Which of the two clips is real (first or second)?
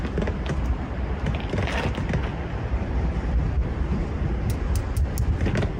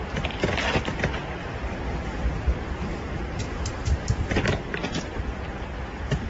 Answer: first